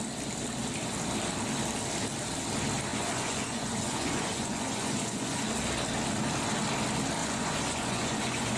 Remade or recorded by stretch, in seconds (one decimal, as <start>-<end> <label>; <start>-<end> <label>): 0.0-2.9 recorded; 2.9-5.5 remade; 5.5-7.2 recorded; 7.2-8.6 remade